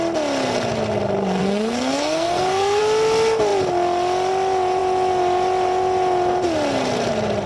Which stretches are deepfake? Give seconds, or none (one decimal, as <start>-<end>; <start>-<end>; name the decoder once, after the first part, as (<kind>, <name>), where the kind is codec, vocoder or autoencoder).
1.4-2.8 (codec, SNAC)